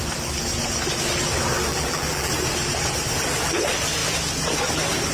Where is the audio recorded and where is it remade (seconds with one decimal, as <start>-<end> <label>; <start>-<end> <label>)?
0.0-1.7 recorded; 1.7-2.3 remade; 2.3-5.1 recorded